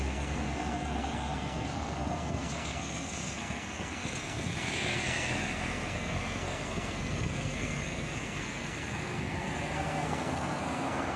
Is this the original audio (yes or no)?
no